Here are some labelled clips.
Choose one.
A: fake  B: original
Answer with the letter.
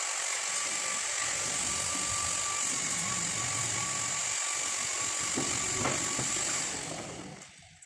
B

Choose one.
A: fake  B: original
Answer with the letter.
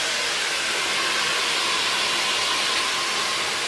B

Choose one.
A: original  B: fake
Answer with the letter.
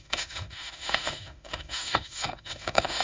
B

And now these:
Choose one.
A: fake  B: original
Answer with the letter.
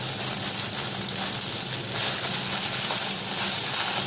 B